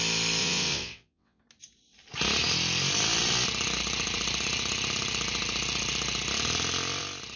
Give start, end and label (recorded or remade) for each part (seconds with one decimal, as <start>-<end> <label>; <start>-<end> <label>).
0.0-0.4 recorded; 0.4-1.4 remade; 1.4-7.4 recorded